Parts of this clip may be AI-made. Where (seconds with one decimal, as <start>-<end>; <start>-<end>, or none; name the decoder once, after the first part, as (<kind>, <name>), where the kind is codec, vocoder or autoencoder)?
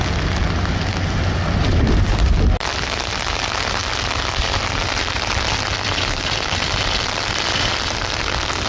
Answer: none